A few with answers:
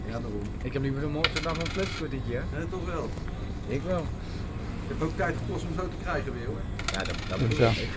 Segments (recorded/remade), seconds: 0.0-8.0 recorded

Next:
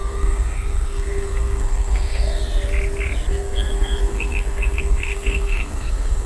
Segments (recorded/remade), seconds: 0.0-2.4 remade; 2.4-3.3 recorded; 3.3-6.3 remade

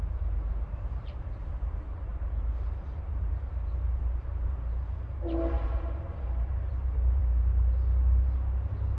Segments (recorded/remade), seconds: 0.0-7.2 remade; 7.2-9.0 recorded

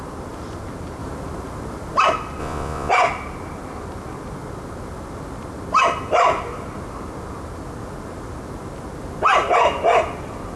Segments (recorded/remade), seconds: 0.0-2.4 recorded; 2.4-2.9 remade; 2.9-10.6 recorded

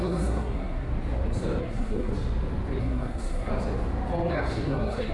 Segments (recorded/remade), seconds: 0.0-0.9 remade; 0.9-1.6 recorded; 1.6-2.1 remade; 2.1-2.8 recorded; 2.8-3.5 remade; 3.5-4.3 recorded; 4.3-5.1 remade